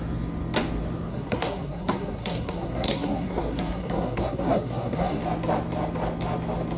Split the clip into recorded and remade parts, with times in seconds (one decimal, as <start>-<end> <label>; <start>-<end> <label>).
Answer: 0.0-1.1 recorded; 1.1-5.2 remade; 5.2-6.8 recorded